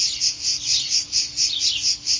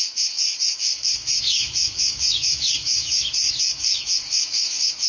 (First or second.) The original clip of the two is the first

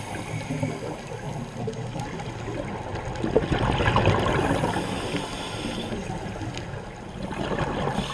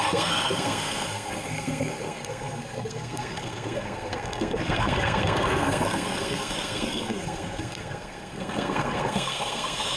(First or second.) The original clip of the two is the first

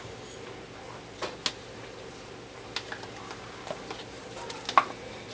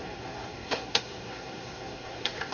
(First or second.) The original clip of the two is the first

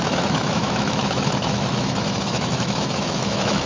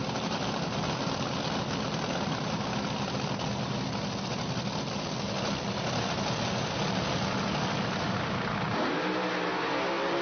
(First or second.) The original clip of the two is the second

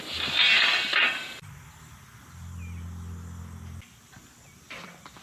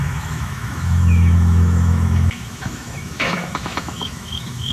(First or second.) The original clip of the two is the first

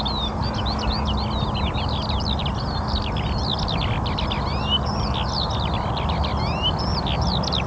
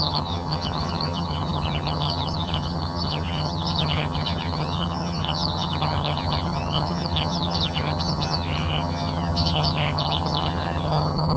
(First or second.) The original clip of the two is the first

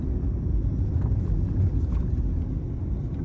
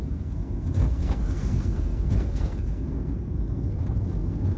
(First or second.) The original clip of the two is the first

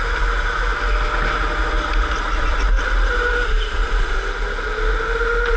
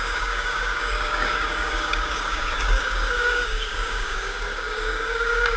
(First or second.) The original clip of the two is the first